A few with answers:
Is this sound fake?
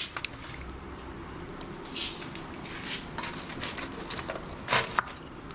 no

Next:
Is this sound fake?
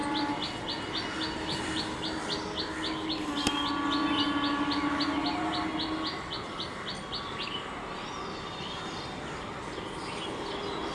no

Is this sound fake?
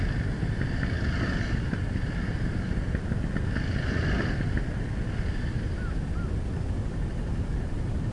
no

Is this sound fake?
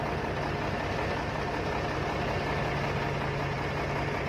no